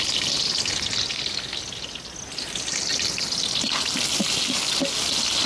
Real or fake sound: real